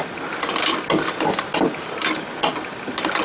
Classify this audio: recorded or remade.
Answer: recorded